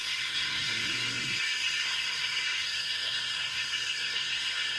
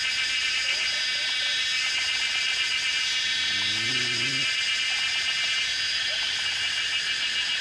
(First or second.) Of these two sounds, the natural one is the second